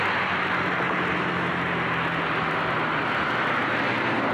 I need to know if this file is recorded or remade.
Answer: recorded